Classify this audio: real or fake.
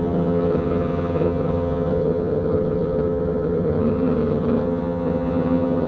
fake